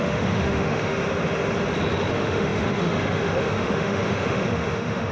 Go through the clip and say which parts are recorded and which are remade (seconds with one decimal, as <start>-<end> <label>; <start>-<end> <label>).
0.0-1.0 remade; 1.0-2.1 recorded; 2.1-5.1 remade